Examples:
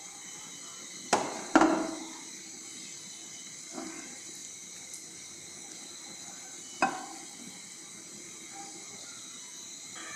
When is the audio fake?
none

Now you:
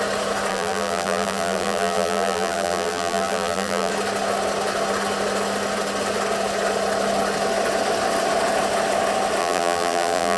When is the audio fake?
0.5-3.9; 9.4-10.4

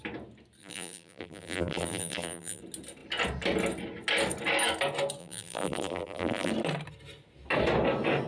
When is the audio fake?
0.6-2.6; 5.2-6.5

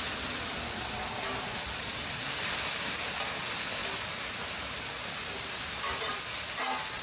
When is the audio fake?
3.8-6.2